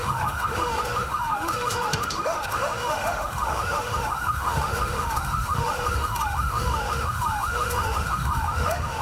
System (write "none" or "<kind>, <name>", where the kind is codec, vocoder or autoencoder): autoencoder, DAC-VAE